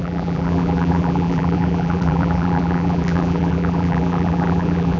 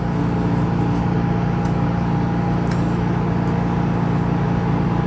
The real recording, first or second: second